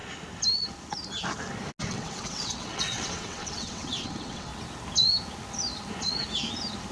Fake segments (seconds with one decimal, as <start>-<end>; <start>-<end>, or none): 1.9-4.5